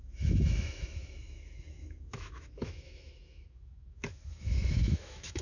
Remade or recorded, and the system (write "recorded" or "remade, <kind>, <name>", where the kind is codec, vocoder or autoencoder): remade, autoencoder, DAC-VAE